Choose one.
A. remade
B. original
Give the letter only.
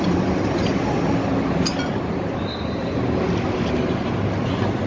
B